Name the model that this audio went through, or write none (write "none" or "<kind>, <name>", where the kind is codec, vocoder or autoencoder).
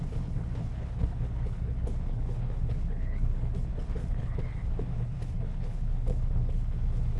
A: codec, HILCodec